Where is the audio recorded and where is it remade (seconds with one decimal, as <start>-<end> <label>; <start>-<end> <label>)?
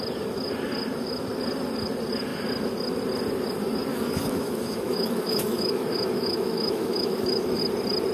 0.0-3.9 recorded; 3.9-7.6 remade; 7.6-8.1 recorded